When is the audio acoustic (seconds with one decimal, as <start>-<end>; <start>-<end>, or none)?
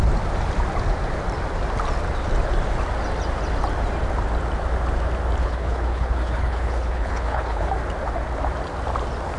0.0-5.4; 7.7-9.4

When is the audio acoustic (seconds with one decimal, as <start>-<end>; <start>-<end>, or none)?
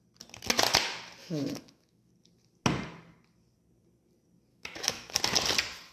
0.0-1.2; 2.1-4.5; 5.2-5.9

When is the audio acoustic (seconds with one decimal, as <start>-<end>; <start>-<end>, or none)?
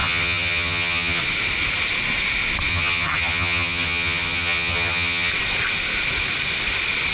1.2-2.7; 5.3-7.1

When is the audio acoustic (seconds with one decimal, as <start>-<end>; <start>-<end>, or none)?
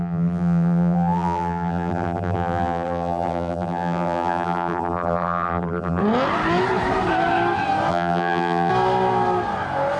6.0-7.9; 8.7-10.0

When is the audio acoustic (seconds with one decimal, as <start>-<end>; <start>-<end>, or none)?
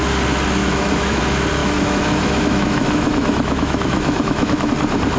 0.0-0.6; 1.2-1.6; 4.7-5.2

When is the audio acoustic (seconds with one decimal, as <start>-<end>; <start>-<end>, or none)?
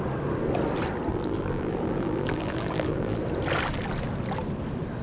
0.0-1.1; 3.2-5.0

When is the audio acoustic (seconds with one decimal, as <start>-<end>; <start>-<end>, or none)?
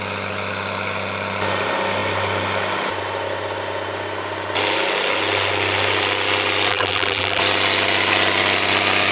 0.0-6.7; 7.4-9.1